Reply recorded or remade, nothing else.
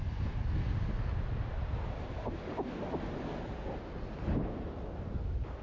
recorded